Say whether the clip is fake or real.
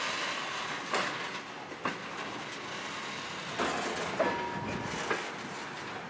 real